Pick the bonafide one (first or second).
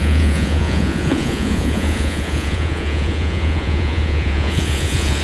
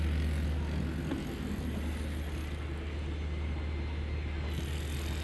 second